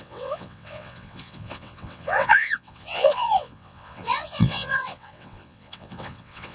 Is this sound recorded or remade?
remade